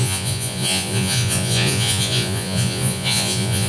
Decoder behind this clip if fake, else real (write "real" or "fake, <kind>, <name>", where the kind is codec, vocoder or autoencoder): fake, vocoder, Vocos